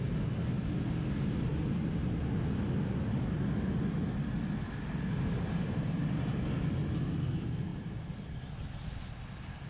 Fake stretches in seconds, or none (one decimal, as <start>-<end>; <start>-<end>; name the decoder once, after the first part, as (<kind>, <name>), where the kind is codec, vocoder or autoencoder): none